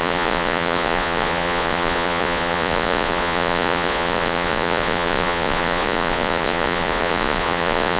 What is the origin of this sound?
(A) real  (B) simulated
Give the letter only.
B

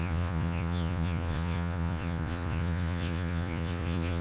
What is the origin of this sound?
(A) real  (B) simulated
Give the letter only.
B